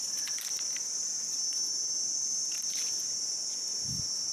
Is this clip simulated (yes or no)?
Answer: no